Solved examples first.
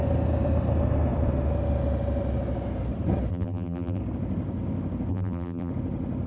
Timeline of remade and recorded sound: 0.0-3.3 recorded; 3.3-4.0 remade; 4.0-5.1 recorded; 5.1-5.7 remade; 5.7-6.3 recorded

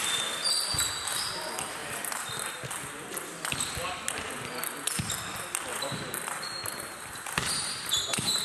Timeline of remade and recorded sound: 0.0-1.8 recorded; 1.8-2.7 remade; 2.7-5.7 recorded; 5.7-8.4 remade

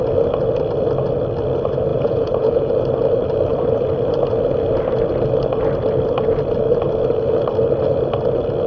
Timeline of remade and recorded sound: 0.0-1.9 recorded; 1.9-2.7 remade; 2.7-8.7 recorded